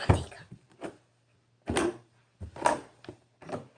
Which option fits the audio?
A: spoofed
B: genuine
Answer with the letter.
A